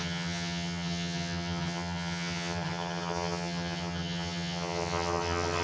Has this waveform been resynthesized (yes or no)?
yes